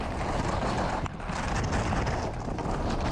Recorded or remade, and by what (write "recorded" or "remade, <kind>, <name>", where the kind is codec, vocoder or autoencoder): recorded